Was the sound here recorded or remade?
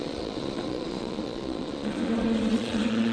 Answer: remade